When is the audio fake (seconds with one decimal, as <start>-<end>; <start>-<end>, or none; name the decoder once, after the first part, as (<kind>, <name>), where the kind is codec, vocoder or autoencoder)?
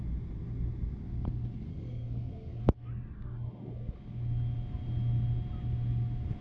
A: 1.7-2.6 (codec, SNAC)